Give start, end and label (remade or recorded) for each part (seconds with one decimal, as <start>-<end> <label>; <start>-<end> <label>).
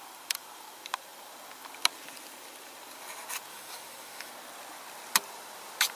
0.0-3.5 recorded; 3.5-4.3 remade; 4.3-6.0 recorded